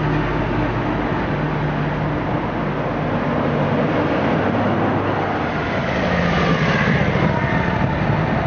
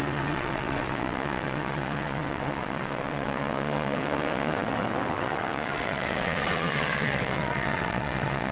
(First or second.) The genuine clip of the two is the first